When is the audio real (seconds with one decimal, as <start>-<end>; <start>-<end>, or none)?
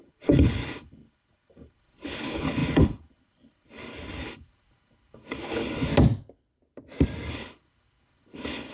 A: 5.9-7.3